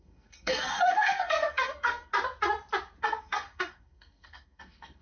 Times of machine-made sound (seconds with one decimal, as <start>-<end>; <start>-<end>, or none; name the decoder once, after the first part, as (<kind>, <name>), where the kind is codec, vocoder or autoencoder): 0.0-2.1 (codec, SNAC); 3.0-5.0